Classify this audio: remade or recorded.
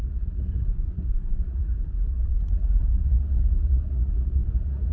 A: remade